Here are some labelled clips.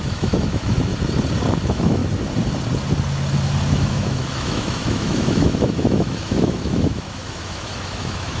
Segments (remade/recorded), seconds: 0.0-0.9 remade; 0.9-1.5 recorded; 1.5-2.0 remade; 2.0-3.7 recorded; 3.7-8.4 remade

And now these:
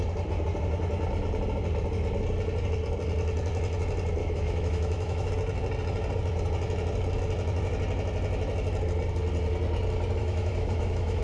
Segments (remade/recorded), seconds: 0.0-4.2 recorded; 4.2-5.3 remade; 5.3-10.2 recorded; 10.2-11.2 remade